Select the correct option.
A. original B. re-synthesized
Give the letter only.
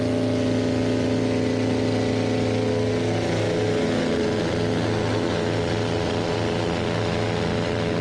A